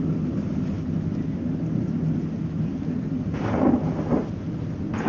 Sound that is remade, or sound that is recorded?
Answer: recorded